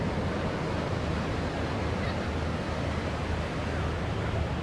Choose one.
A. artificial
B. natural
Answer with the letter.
B